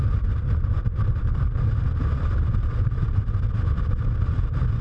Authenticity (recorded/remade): recorded